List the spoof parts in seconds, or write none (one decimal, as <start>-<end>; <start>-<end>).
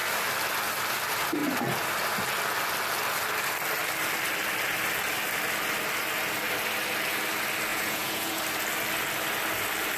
7.7-8.4